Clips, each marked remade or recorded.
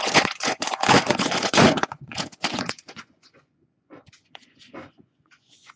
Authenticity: remade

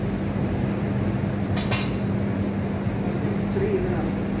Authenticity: recorded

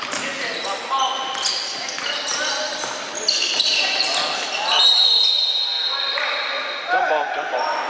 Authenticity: recorded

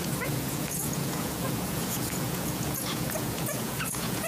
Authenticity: remade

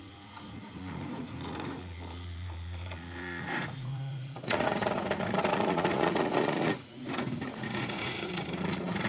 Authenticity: remade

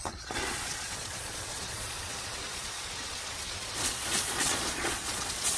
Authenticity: remade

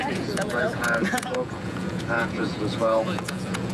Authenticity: remade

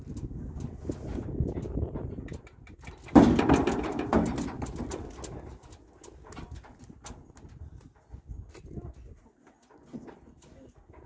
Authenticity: recorded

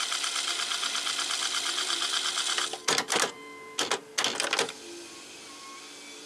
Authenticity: recorded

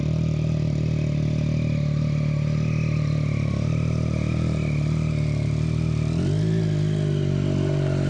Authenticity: recorded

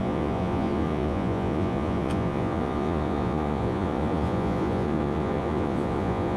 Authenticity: remade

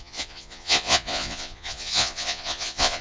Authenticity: remade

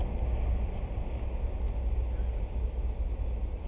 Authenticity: recorded